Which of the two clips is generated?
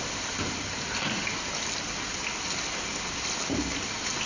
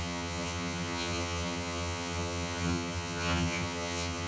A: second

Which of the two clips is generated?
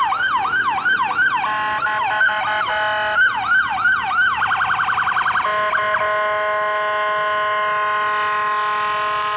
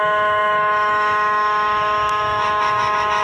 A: second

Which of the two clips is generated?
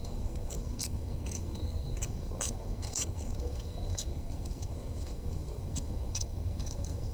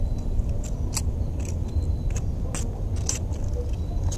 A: first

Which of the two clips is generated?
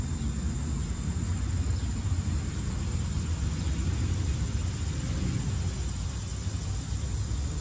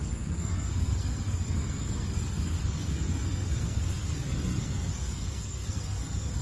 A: second